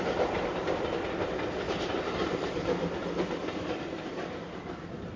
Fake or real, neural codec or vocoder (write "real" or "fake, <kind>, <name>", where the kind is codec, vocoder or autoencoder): real